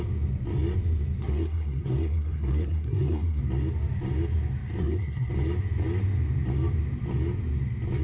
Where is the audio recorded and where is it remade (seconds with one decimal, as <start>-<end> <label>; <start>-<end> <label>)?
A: 0.0-1.2 recorded; 1.2-3.4 remade; 3.4-4.8 recorded; 4.8-5.3 remade; 5.3-8.0 recorded